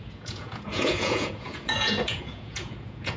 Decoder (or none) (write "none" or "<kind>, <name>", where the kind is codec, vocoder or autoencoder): vocoder, Vocos